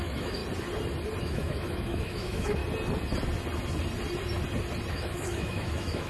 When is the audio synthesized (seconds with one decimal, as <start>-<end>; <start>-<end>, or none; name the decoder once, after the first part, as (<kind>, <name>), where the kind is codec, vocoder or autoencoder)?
0.0-0.4 (autoencoder, DAC-VAE); 1.2-2.6; 4.9-6.1